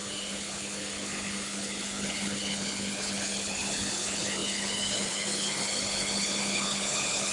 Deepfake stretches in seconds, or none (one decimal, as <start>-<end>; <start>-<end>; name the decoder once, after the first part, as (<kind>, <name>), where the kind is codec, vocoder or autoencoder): 0.0-7.3 (codec, HILCodec)